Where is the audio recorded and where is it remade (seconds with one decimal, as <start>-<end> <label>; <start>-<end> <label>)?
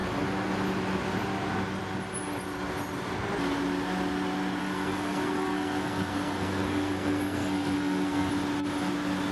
0.0-4.6 recorded; 4.6-8.3 remade; 8.3-9.3 recorded